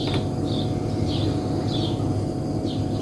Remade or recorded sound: recorded